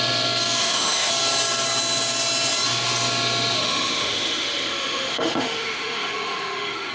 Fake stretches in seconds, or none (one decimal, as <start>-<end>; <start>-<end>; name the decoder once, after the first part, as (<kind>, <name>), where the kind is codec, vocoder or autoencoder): 0.6-1.1 (autoencoder, DAC-VAE); 3.6-6.9